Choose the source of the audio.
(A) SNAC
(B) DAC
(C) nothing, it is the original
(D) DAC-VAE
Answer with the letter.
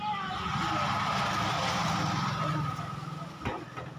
C